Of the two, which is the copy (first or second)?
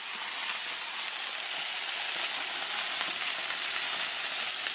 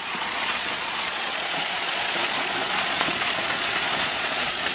second